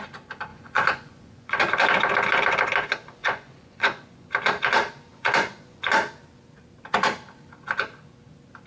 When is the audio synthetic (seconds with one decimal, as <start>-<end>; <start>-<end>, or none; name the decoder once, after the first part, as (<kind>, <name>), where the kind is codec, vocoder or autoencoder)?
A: 0.5-1.6 (vocoder, Vocos); 3.2-4.3; 5.1-5.9